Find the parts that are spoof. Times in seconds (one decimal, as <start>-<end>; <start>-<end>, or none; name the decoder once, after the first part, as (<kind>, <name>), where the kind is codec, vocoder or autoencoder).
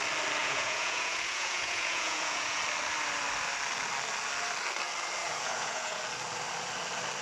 0.4-2.6 (vocoder, Vocos); 5.2-6.0